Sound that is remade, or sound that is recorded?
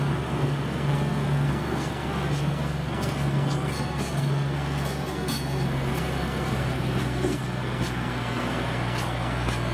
remade